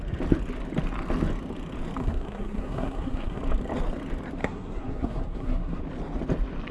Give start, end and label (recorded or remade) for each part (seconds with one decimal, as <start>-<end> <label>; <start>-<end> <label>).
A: 0.0-2.0 recorded; 2.0-3.4 remade; 3.4-4.4 recorded; 4.4-5.8 remade; 5.8-6.7 recorded